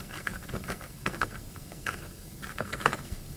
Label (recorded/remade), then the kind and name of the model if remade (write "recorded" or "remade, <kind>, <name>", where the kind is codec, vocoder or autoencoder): remade, codec, SNAC